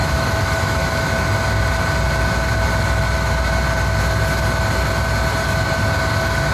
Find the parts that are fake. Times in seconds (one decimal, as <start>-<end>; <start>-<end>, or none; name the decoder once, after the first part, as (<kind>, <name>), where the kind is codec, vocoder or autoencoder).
0.0-1.0 (autoencoder, DAC-VAE); 2.7-3.3